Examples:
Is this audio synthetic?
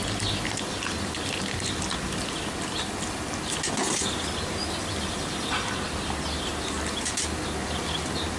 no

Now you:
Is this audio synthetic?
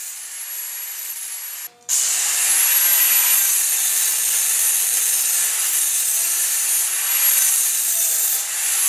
no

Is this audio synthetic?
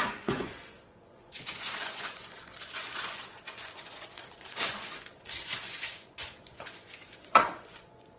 yes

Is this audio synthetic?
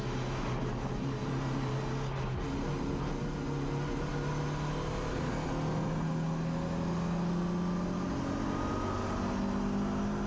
no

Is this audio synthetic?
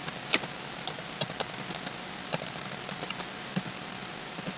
no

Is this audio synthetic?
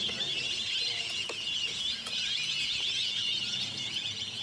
yes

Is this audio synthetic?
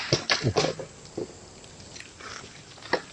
no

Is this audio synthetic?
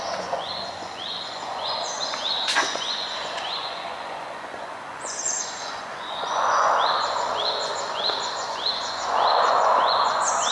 yes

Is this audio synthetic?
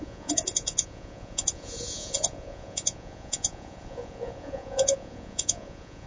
yes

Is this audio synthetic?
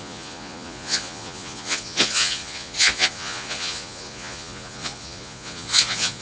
yes